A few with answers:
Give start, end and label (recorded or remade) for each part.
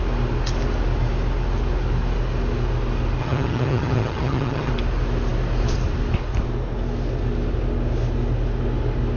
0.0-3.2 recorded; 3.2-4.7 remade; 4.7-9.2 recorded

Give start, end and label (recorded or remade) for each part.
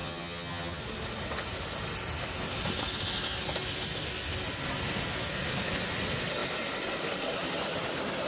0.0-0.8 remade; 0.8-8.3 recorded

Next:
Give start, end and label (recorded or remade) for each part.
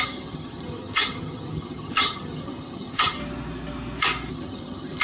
0.0-3.2 remade; 3.2-4.3 recorded; 4.3-5.0 remade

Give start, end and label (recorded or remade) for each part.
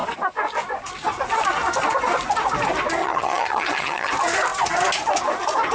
0.0-3.0 recorded; 3.0-4.1 remade; 4.1-5.7 recorded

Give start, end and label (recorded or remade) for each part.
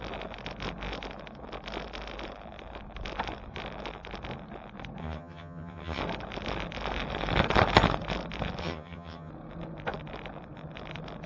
0.0-5.0 recorded; 5.0-6.0 remade; 6.0-8.6 recorded; 8.6-9.3 remade; 9.3-11.3 recorded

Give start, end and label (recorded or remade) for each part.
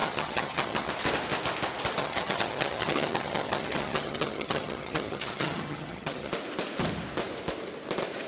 0.0-0.9 remade; 0.9-2.0 recorded; 2.0-6.3 remade; 6.3-8.3 recorded